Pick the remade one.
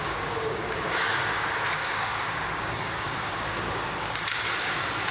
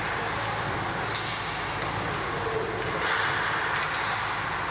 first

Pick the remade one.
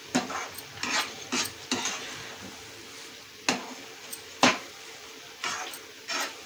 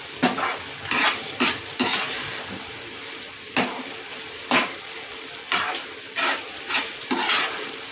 second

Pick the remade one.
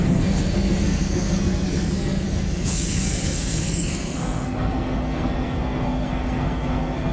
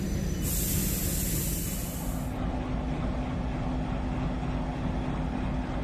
first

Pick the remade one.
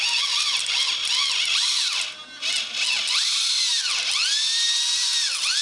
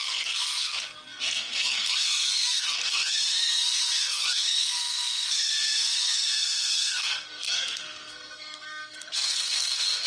second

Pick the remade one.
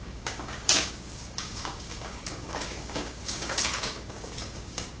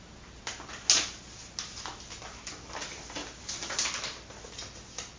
first